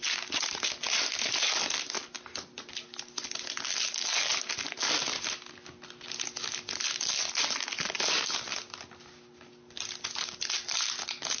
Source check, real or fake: real